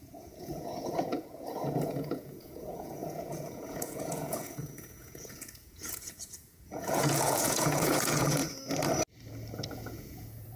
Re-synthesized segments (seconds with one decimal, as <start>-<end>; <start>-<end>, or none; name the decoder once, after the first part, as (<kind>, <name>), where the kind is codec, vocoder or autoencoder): 0.0-8.4 (vocoder, Vocos); 9.7-10.6